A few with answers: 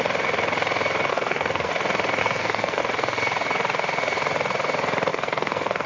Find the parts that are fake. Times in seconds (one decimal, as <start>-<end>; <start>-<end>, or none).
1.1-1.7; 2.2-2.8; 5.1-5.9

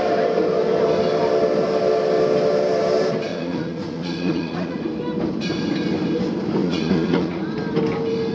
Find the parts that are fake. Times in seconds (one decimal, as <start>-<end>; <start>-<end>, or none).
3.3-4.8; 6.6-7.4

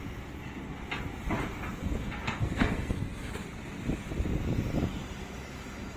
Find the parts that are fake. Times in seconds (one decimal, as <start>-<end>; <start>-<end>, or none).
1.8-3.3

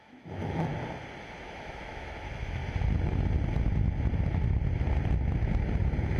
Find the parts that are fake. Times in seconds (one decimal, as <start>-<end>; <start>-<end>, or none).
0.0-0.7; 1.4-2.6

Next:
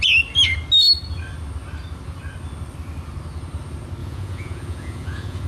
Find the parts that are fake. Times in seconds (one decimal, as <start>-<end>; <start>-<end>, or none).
4.0-5.5

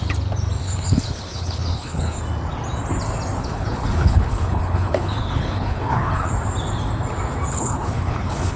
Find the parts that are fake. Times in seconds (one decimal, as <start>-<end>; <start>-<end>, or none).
0.6-2.2; 3.4-6.3; 7.5-8.6